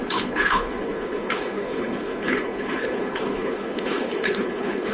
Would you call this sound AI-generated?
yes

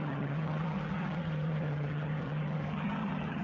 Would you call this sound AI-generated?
yes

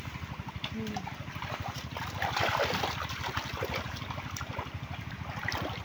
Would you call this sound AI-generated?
no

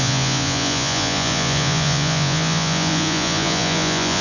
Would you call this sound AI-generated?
yes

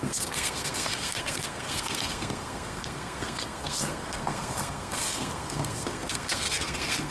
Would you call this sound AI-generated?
yes